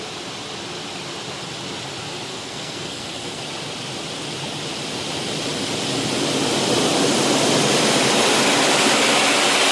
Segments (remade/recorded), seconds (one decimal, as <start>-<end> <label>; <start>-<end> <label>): 0.0-2.3 recorded; 2.3-3.4 remade; 3.4-9.7 recorded